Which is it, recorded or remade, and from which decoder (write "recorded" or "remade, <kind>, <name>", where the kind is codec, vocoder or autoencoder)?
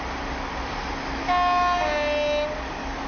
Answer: recorded